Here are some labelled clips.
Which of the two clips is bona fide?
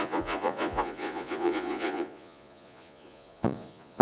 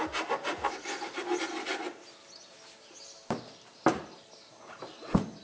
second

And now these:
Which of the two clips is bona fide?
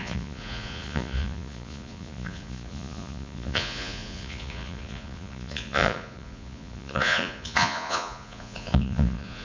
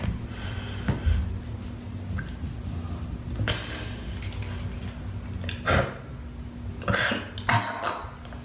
second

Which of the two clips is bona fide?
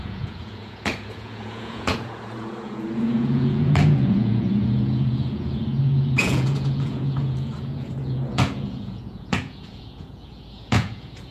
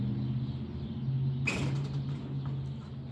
second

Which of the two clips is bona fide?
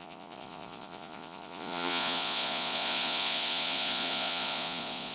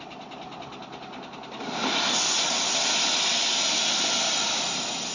second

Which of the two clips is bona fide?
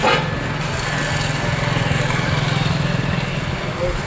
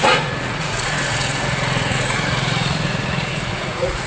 first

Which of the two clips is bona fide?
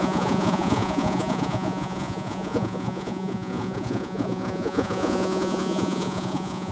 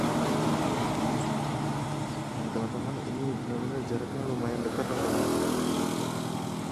second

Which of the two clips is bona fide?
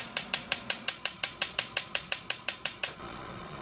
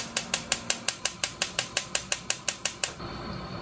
second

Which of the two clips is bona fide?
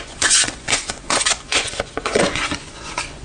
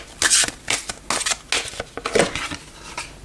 second